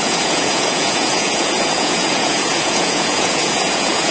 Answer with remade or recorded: remade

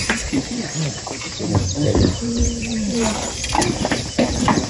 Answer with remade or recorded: remade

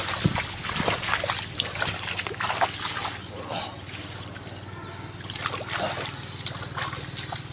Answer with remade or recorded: recorded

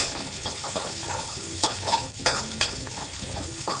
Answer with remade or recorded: remade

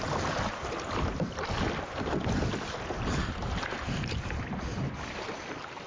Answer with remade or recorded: recorded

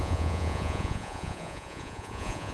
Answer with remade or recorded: remade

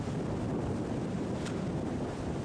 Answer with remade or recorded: recorded